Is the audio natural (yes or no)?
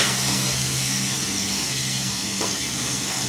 no